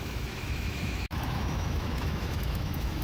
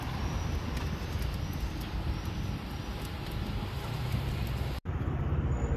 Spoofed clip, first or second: first